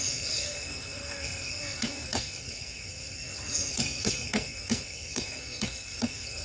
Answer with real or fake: fake